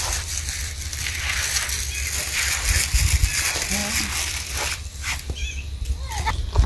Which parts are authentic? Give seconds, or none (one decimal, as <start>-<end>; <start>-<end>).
0.0-6.7